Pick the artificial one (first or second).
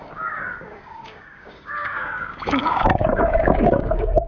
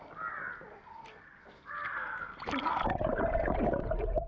first